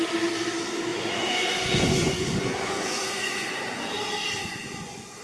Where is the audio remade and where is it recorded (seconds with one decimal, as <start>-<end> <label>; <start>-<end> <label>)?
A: 0.0-0.9 recorded; 0.9-3.9 remade; 3.9-4.4 recorded; 4.4-5.2 remade